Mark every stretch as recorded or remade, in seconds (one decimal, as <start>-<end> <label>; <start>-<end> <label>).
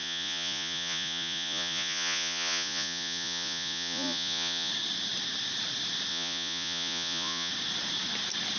0.0-4.7 remade; 4.7-6.1 recorded; 6.1-7.5 remade; 7.5-8.6 recorded